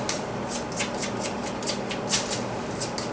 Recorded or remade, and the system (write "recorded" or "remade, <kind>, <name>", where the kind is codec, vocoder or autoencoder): recorded